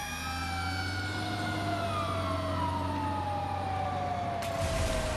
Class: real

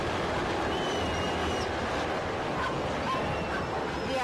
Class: real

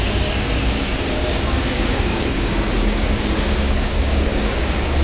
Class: fake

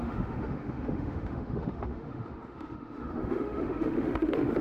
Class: fake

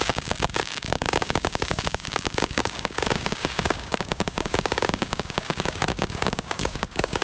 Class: fake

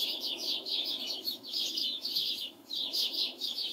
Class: fake